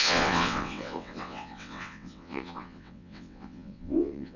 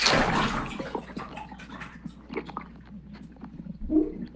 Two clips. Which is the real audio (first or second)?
second